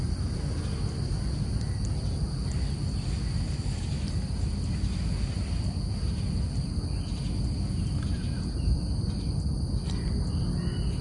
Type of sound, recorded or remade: recorded